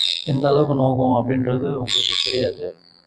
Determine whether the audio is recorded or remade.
remade